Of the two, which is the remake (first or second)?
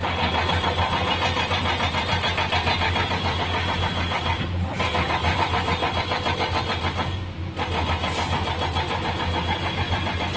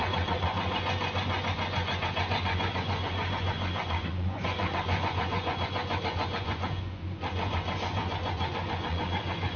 second